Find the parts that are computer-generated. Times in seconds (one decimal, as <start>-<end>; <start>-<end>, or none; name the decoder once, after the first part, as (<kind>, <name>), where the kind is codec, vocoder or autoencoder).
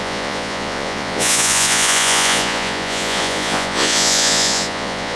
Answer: 0.0-5.2 (vocoder, Vocos)